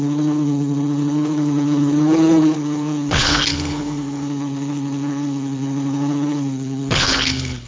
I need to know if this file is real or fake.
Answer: fake